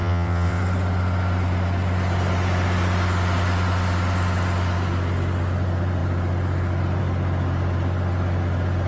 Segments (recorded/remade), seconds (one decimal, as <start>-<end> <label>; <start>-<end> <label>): 0.0-0.6 remade; 0.6-8.9 recorded